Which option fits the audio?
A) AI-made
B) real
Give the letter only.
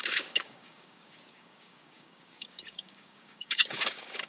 A